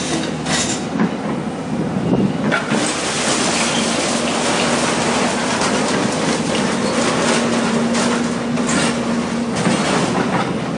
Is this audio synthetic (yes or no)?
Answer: no